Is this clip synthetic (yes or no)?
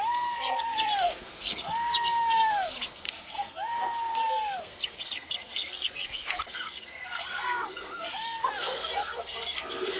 yes